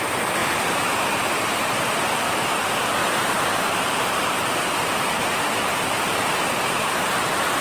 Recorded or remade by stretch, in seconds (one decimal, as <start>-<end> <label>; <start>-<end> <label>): 0.0-0.4 recorded; 0.4-1.1 remade; 1.1-3.0 recorded; 3.0-7.1 remade; 7.1-7.6 recorded